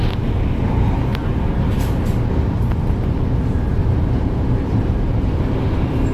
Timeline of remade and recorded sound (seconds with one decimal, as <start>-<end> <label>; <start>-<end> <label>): 0.0-3.8 recorded; 3.8-5.4 remade; 5.4-6.1 recorded